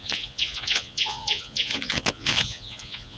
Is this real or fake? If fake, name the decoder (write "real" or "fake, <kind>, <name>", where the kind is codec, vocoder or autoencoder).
fake, vocoder, Vocos